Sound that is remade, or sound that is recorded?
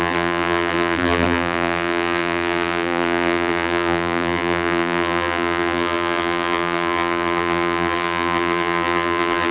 remade